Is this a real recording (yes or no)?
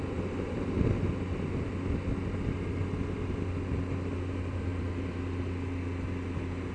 yes